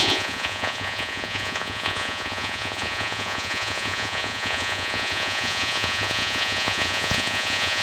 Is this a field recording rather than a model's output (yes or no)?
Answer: no